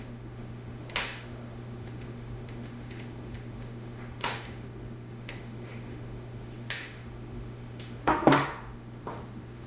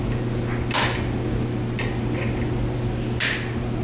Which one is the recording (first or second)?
second